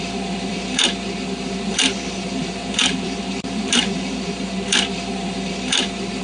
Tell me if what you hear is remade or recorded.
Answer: remade